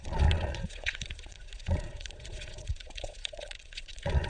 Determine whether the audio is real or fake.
fake